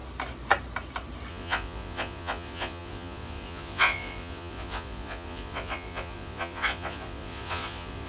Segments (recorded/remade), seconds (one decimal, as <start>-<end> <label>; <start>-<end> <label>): 0.0-1.3 recorded; 1.3-8.1 remade